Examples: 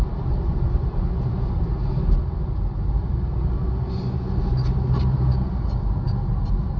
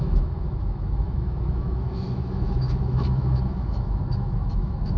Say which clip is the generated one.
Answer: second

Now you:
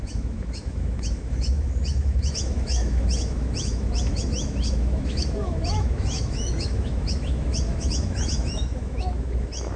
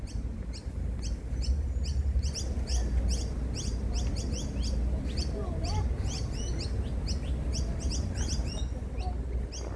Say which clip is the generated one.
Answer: first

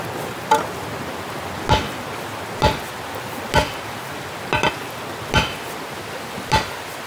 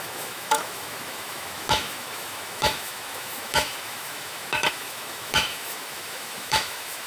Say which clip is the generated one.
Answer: second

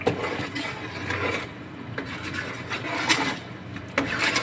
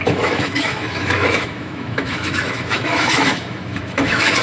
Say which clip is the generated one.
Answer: second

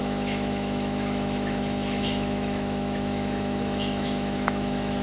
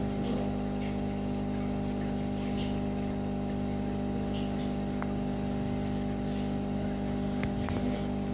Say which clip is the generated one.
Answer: first